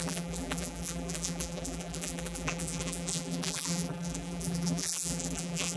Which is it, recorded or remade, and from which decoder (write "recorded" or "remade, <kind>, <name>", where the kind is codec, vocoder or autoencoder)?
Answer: remade, vocoder, BigVGAN v2